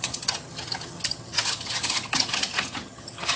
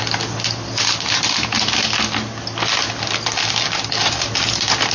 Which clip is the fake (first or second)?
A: first